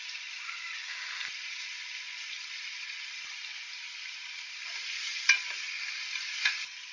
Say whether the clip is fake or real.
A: real